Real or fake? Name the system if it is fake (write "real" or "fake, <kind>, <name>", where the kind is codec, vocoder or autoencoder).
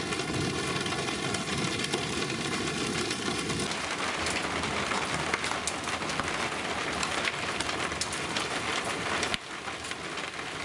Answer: real